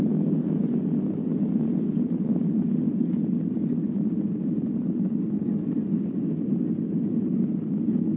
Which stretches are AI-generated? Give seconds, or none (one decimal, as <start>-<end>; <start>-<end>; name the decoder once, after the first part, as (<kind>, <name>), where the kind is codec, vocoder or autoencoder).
none